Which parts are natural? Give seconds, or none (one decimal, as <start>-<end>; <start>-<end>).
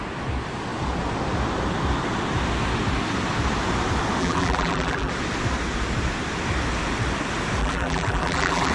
0.0-4.2; 5.1-7.6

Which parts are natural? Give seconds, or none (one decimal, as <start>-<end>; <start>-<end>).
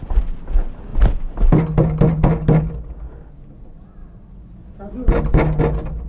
0.0-6.1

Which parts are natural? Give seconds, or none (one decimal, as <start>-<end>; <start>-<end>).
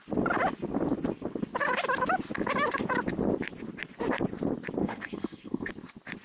0.0-4.8; 5.7-6.2